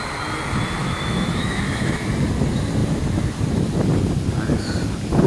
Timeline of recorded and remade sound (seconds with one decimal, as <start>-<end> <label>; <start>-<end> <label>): 0.0-0.8 recorded; 0.8-2.1 remade; 2.1-5.3 recorded